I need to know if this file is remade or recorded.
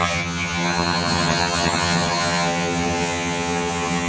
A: remade